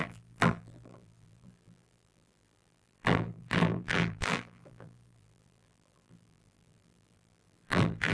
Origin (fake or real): fake